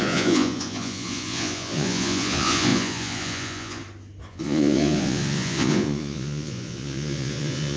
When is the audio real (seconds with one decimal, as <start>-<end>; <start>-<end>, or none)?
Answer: 3.8-4.3